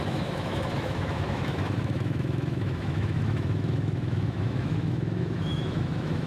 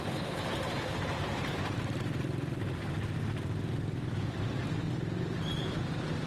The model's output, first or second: first